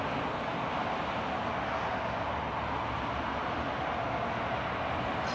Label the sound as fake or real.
real